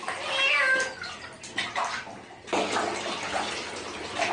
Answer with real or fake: real